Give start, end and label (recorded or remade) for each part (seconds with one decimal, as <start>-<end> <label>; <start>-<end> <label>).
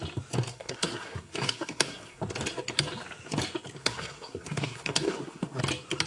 0.0-0.5 recorded; 0.5-2.2 remade; 2.2-3.8 recorded; 3.8-5.6 remade; 5.6-6.1 recorded